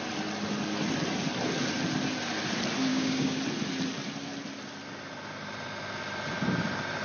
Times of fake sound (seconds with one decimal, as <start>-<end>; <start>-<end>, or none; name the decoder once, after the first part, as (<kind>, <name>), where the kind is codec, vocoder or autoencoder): 2.9-3.4 (codec, DAC)